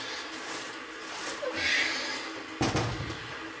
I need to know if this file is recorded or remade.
recorded